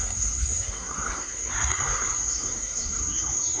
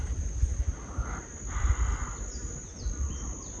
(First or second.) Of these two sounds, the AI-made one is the first